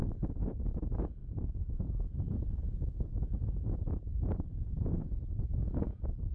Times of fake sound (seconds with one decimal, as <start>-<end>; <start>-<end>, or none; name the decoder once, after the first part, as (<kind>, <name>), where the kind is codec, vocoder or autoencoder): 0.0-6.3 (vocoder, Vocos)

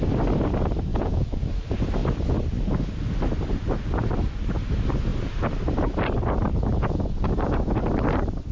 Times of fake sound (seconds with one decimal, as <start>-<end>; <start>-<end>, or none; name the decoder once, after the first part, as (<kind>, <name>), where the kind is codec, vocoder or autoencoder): 0.9-1.4 (vocoder, Vocos); 6.7-7.7

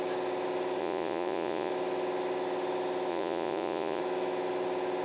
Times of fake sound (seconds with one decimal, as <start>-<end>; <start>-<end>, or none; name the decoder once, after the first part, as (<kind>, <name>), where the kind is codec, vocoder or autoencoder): 0.8-1.7 (vocoder, Vocos); 3.1-4.0